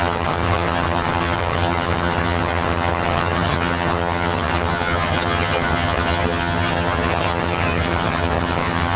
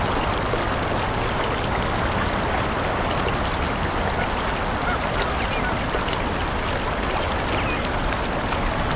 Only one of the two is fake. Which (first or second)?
first